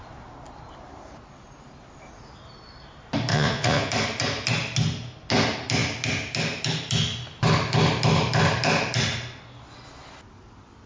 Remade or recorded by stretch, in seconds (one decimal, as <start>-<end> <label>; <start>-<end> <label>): 0.0-3.3 recorded; 3.3-3.9 remade; 3.9-10.9 recorded

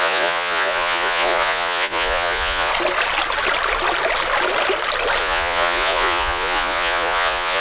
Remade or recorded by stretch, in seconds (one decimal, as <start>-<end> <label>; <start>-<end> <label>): 0.0-2.7 remade; 2.7-5.2 recorded; 5.2-7.6 remade

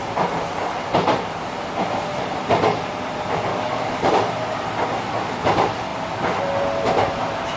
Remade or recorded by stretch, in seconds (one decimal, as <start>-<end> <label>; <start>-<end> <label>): 0.0-3.5 recorded; 3.5-4.1 remade; 4.1-7.6 recorded

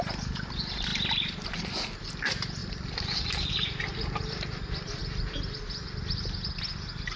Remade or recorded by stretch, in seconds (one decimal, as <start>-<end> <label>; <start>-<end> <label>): 0.0-7.2 recorded

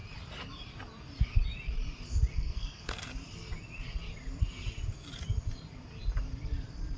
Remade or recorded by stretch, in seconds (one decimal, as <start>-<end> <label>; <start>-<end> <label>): 0.0-2.3 recorded; 2.3-3.1 remade; 3.1-7.0 recorded

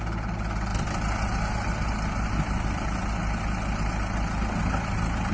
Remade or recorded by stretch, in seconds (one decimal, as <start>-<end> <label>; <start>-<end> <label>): 0.0-5.3 recorded